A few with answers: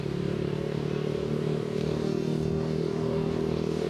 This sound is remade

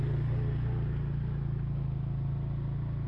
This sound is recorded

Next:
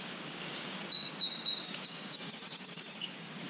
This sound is remade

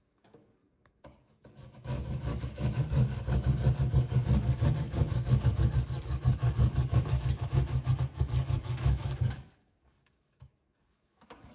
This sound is remade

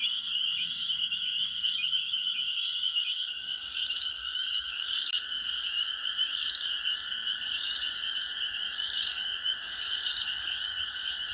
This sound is remade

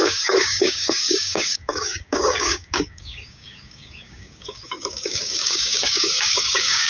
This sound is remade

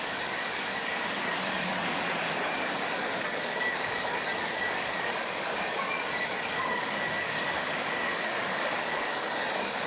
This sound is remade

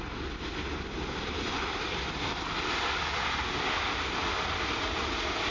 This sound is recorded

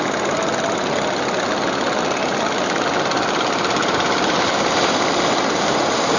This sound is recorded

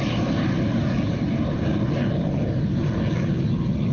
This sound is recorded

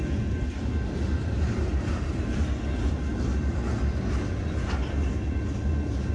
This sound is recorded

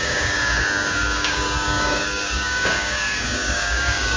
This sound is remade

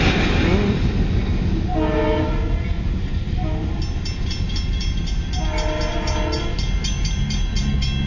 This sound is recorded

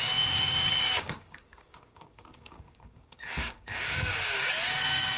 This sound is remade